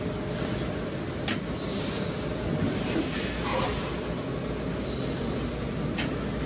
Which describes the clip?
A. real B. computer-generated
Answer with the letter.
A